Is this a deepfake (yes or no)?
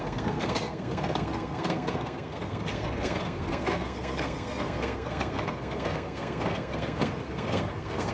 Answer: yes